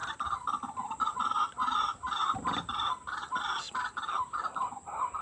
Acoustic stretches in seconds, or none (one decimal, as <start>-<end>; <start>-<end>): 0.0-5.2